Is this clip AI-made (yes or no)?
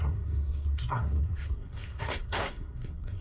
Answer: yes